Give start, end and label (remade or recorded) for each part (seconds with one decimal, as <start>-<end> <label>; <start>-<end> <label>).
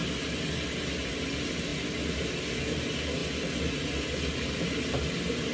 0.0-5.5 recorded